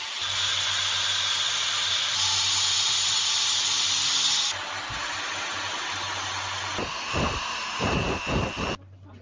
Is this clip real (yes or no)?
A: yes